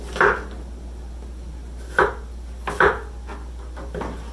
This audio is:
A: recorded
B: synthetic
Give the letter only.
A